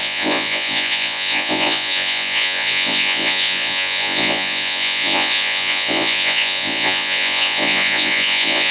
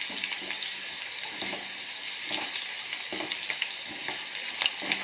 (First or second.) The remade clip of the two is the first